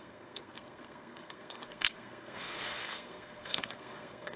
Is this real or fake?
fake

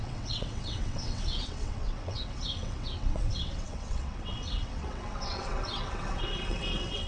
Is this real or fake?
fake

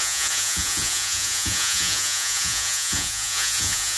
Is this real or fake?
fake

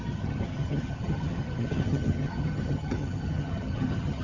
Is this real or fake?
fake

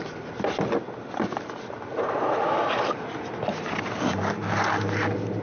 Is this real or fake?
real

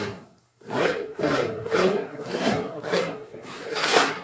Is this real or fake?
fake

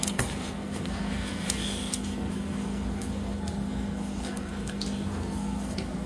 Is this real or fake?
fake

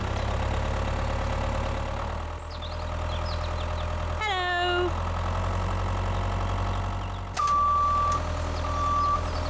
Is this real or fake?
real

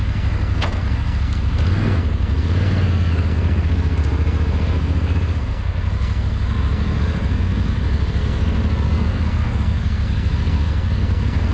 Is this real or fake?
fake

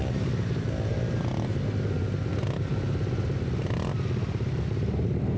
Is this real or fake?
real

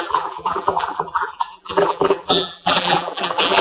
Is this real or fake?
fake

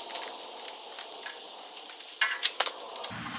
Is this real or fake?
real